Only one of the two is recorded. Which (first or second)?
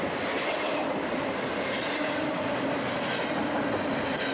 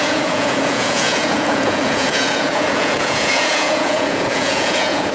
first